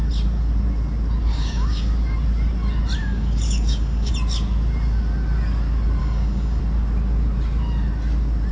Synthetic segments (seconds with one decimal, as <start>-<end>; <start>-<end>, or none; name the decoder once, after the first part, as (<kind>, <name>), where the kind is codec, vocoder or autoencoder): 1.3-1.9 (codec, DAC); 3.0-4.1; 6.0-6.6